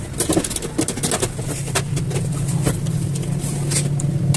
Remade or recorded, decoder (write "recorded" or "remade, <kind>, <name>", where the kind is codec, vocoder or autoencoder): recorded